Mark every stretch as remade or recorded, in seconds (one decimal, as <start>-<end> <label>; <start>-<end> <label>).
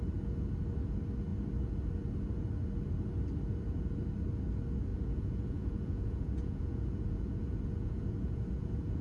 0.0-4.9 recorded; 4.9-9.0 remade